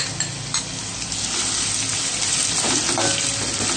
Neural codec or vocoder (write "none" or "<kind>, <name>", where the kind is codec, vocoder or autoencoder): none